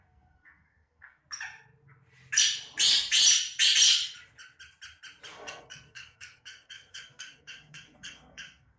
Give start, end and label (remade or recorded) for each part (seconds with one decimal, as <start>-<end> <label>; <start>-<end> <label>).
0.0-1.2 remade; 1.2-5.3 recorded; 5.3-8.8 remade

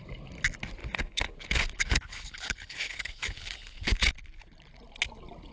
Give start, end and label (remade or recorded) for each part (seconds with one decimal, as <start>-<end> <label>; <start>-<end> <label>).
0.0-0.8 recorded; 0.8-4.1 remade; 4.1-5.5 recorded

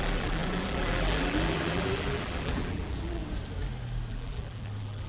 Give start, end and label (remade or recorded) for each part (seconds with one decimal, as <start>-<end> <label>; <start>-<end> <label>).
0.0-3.2 remade; 3.2-4.1 recorded; 4.1-5.1 remade

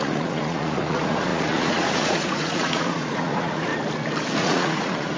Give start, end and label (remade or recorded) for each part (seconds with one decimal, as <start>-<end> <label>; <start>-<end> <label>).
0.0-3.7 remade; 3.7-4.4 recorded; 4.4-5.2 remade

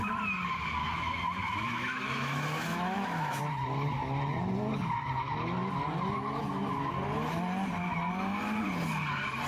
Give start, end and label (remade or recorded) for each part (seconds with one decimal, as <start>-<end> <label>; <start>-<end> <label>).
0.0-0.8 recorded; 0.8-3.4 remade; 3.4-9.5 recorded

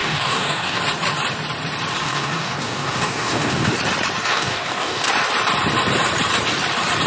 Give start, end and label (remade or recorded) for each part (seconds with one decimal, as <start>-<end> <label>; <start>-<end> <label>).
0.0-0.8 remade; 0.8-2.0 recorded; 2.0-3.7 remade; 3.7-4.3 recorded; 4.3-5.1 remade; 5.1-7.1 recorded

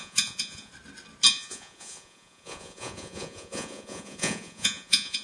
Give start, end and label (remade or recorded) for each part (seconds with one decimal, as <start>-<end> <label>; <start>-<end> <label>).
0.0-0.7 remade; 0.7-1.3 recorded; 1.3-5.2 remade